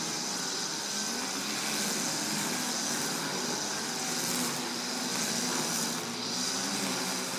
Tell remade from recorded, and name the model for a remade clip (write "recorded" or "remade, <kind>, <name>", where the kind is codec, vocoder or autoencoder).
recorded